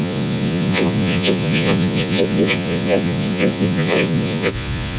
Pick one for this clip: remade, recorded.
remade